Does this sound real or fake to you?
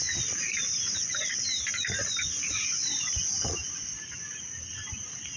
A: real